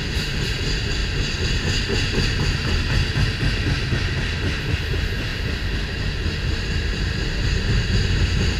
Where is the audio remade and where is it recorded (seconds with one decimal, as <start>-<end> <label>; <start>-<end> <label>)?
0.0-1.0 remade; 1.0-4.7 recorded; 4.7-5.3 remade; 5.3-6.7 recorded; 6.7-7.2 remade; 7.2-8.2 recorded; 8.2-8.6 remade